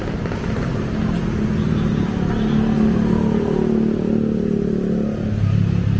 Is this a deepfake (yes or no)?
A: no